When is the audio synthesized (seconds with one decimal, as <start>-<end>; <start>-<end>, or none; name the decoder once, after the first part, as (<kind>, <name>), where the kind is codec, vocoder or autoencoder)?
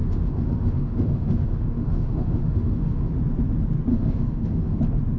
0.0-3.1 (autoencoder, DAC-VAE); 3.9-4.8